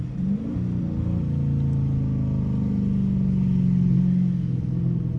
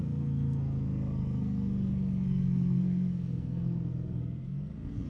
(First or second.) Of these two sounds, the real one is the first